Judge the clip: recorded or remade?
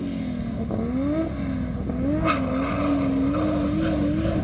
recorded